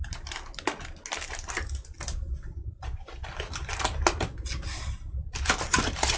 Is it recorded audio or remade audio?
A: recorded